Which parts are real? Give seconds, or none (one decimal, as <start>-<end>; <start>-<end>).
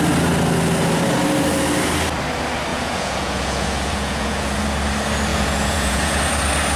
0.0-2.7; 4.6-5.3; 6.2-6.8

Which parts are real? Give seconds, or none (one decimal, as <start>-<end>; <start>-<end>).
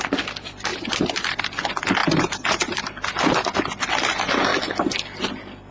0.0-0.7; 1.4-2.0; 2.8-5.7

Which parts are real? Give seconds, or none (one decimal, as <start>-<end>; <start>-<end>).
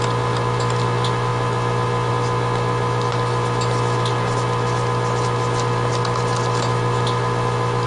0.0-7.9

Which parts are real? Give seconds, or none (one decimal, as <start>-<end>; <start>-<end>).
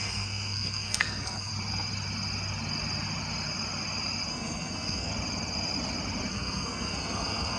1.5-4.3; 5.1-6.3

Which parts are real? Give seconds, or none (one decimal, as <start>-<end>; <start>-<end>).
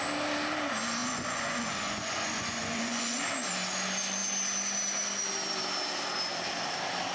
0.0-1.0; 3.2-7.1